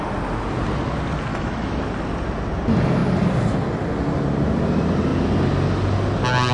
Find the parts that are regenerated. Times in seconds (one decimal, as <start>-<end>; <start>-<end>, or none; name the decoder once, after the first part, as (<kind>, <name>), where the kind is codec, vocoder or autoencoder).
1.3-1.8 (autoencoder, DAC-VAE)